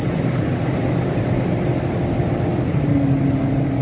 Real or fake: real